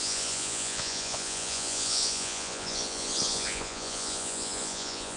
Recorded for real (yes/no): no